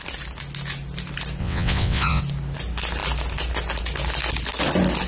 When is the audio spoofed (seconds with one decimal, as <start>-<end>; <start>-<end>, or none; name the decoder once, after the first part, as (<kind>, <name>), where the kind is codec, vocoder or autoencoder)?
1.4-2.2 (vocoder, WaveNeXt)